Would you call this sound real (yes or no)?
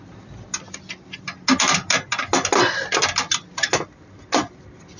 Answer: yes